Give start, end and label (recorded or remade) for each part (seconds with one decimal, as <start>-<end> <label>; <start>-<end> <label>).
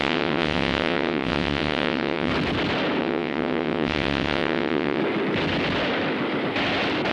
0.0-2.3 remade; 2.3-3.0 recorded; 3.0-5.0 remade; 5.0-7.1 recorded